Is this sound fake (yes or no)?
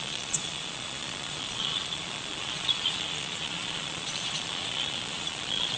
yes